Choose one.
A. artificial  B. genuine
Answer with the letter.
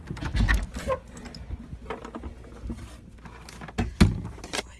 B